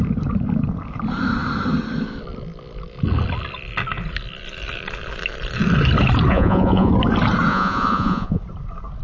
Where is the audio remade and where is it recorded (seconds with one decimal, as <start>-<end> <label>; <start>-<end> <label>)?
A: 0.0-6.3 recorded; 6.3-6.9 remade; 6.9-7.5 recorded; 7.5-8.4 remade; 8.4-9.0 recorded